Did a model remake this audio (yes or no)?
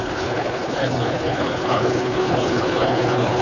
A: yes